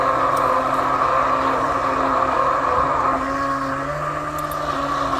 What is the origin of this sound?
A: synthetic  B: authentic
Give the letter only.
B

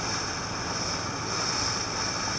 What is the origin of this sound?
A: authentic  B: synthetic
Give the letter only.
B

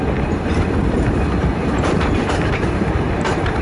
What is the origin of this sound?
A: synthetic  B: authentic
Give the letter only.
A